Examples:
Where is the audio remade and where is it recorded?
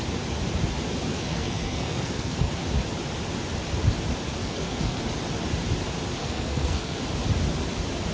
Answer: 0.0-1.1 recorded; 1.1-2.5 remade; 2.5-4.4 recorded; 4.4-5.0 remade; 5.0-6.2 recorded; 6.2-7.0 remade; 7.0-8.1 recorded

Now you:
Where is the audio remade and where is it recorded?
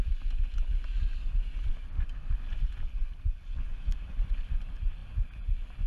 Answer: 0.0-5.9 recorded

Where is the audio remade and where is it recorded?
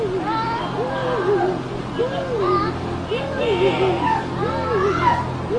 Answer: 0.0-5.6 recorded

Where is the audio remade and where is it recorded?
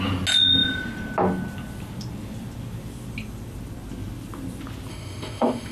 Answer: 0.0-4.9 recorded; 4.9-5.7 remade